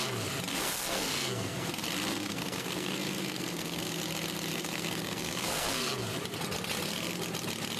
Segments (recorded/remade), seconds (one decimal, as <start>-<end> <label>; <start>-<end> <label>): 0.0-0.5 recorded; 0.5-1.7 remade; 1.7-2.1 recorded; 2.1-4.0 remade; 4.0-4.5 recorded; 4.5-6.1 remade; 6.1-7.8 recorded